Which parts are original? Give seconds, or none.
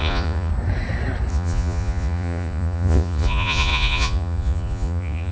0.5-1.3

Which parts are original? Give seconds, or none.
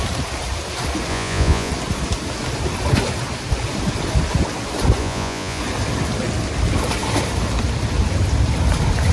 0.0-1.1; 1.7-5.0; 5.6-9.1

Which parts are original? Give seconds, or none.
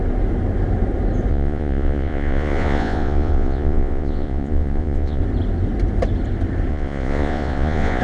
0.0-1.3; 5.2-6.7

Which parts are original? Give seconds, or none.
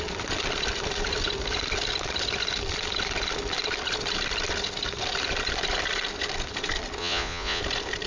0.0-7.0; 7.6-8.1